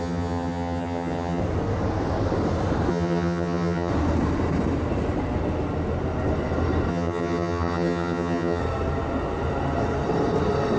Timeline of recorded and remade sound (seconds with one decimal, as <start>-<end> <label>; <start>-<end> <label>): 0.0-1.4 remade; 1.4-2.9 recorded; 2.9-3.9 remade; 3.9-6.9 recorded; 6.9-8.6 remade; 8.6-10.8 recorded